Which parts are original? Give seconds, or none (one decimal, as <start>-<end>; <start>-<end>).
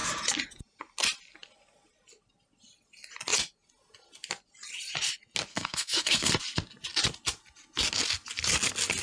0.0-5.5; 6.3-9.0